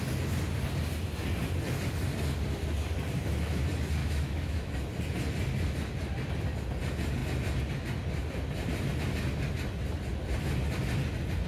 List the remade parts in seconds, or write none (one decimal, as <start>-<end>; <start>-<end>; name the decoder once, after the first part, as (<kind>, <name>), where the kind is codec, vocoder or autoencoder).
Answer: 4.0-4.6 (autoencoder, DAC-VAE)